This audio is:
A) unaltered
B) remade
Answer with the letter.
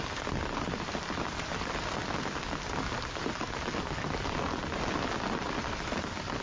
A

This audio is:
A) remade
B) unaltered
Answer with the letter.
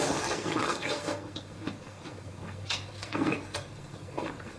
A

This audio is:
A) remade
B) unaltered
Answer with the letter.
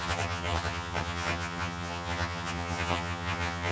A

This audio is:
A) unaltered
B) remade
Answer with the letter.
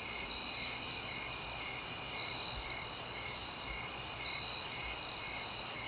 A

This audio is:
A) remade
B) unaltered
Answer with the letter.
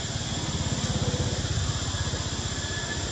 B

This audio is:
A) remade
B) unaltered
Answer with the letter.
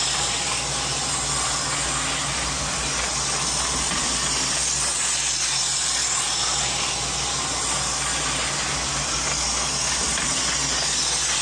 B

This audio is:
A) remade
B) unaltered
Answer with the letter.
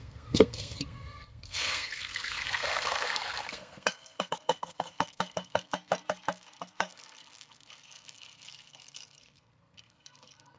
A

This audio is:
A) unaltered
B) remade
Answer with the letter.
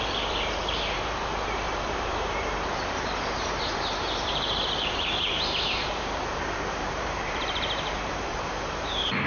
B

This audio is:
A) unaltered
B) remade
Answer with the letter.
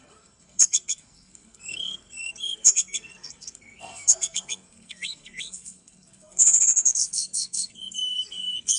B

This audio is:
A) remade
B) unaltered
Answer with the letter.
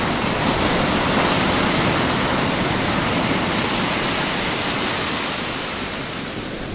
B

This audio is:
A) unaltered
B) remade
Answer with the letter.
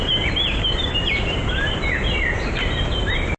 B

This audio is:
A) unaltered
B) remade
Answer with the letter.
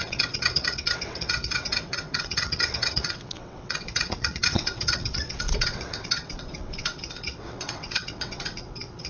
B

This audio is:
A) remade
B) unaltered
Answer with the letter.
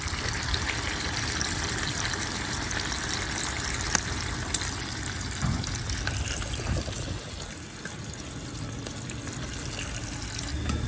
B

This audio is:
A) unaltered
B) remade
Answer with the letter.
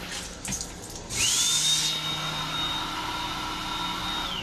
A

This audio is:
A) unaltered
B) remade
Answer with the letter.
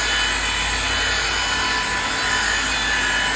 A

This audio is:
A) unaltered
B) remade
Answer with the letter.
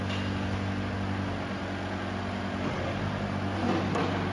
A